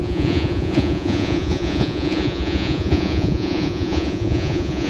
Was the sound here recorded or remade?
remade